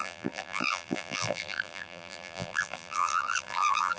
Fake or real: fake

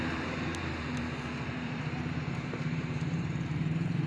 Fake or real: fake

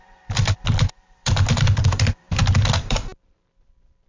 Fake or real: fake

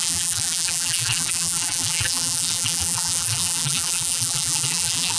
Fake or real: fake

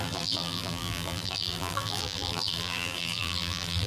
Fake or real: fake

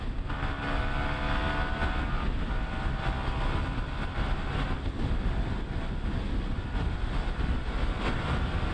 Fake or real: real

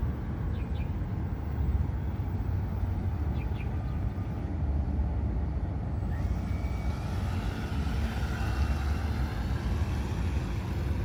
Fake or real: real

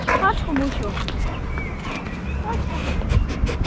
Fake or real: real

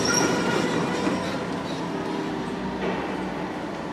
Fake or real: fake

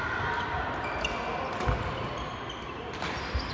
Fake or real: real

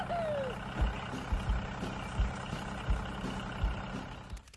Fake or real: real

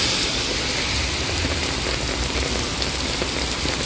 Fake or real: fake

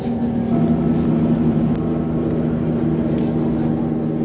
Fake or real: real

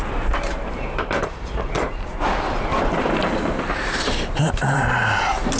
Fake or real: fake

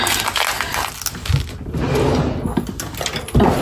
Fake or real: real